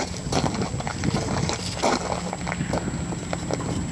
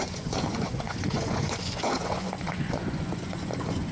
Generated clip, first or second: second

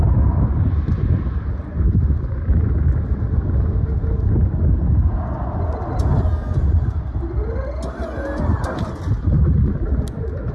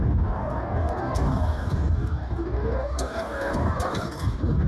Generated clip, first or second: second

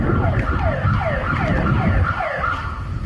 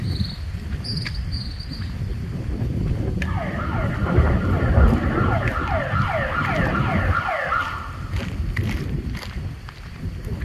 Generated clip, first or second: first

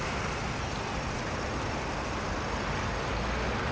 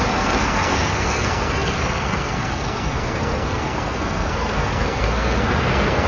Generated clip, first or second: second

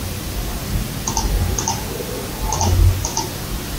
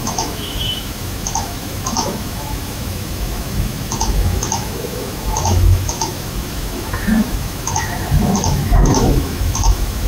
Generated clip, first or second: second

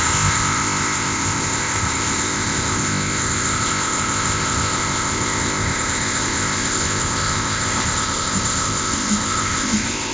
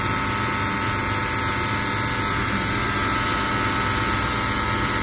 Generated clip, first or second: first